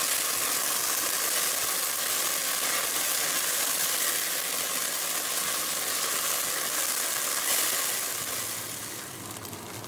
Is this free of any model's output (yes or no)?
yes